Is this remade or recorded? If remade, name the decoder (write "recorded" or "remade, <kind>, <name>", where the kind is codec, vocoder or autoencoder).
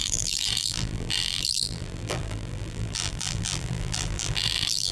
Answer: remade, vocoder, BigVGAN v2